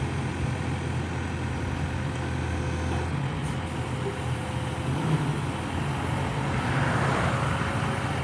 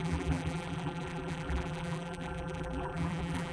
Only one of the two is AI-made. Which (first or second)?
second